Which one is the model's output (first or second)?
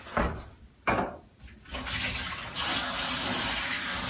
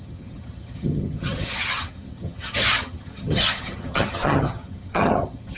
second